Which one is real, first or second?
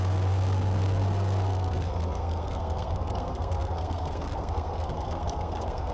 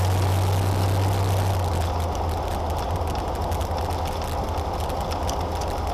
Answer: second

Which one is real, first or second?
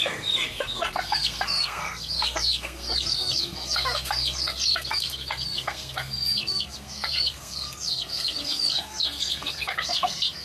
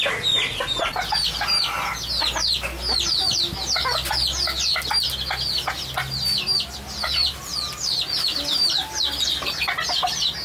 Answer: second